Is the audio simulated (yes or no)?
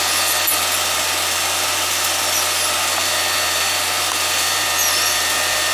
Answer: no